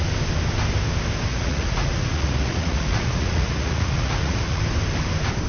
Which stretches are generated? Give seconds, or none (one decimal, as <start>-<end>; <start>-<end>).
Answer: 1.3-4.6